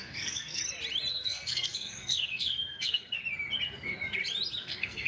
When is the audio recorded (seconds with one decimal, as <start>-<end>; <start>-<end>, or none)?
0.6-1.1; 3.2-4.6